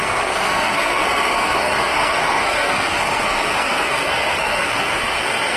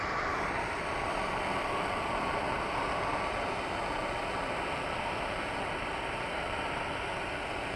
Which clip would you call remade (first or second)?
first